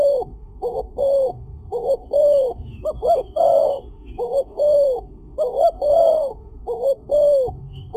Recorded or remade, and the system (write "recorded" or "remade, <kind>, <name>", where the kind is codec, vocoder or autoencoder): remade, autoencoder, DAC-VAE